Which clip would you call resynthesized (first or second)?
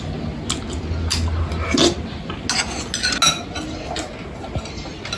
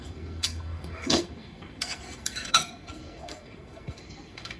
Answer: second